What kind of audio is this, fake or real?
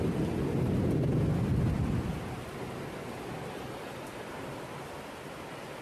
real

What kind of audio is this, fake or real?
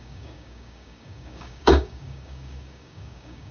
fake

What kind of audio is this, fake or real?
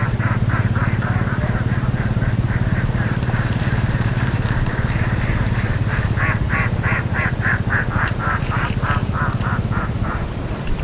fake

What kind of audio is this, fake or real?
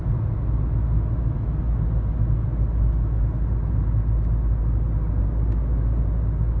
real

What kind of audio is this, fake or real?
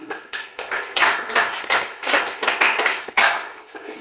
fake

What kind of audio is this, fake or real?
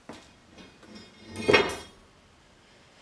real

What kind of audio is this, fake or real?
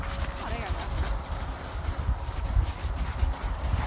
real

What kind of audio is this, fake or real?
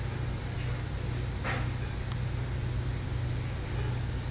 real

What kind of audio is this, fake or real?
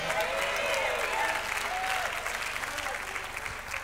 real